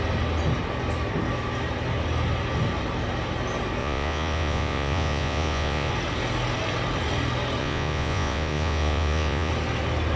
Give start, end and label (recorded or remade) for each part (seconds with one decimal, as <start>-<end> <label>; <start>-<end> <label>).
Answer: 0.0-3.8 recorded; 3.8-5.9 remade; 5.9-7.6 recorded; 7.6-9.5 remade; 9.5-10.2 recorded